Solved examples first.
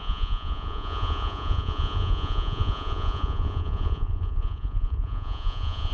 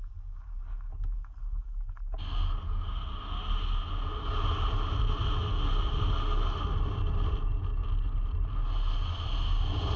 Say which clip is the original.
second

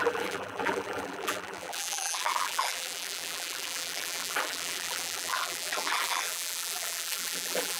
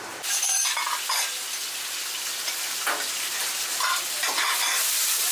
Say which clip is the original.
second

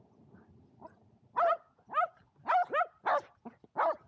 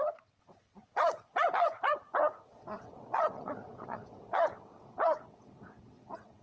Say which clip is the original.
first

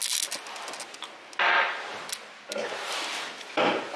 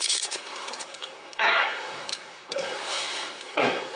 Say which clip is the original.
first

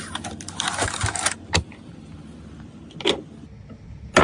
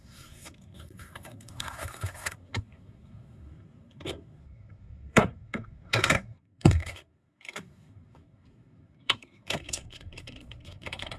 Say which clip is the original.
first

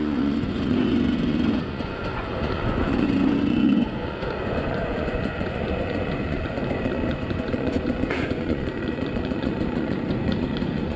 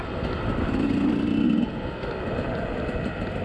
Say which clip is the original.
second